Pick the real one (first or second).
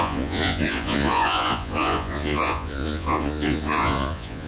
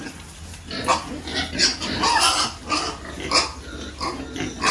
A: second